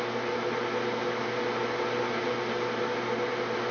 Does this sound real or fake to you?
real